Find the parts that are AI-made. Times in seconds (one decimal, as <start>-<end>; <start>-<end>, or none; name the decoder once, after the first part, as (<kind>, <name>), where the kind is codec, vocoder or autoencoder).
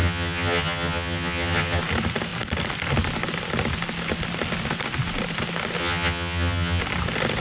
0.0-1.8 (vocoder, HiFi-GAN); 5.8-6.8